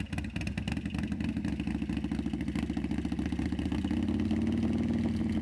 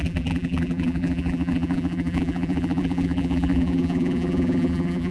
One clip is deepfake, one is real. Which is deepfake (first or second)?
second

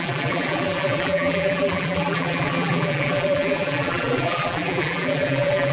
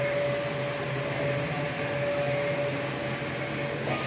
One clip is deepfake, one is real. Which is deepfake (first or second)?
first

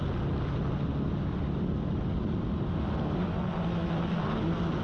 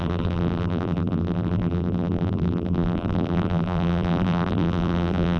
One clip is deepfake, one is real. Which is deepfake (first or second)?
second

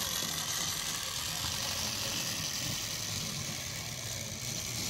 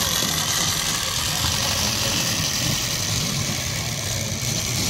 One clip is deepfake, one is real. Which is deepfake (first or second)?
second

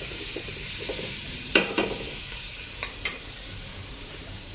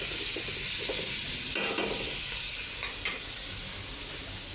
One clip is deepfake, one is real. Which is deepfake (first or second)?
first